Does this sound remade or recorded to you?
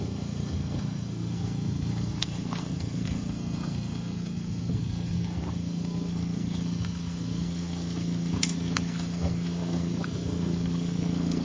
remade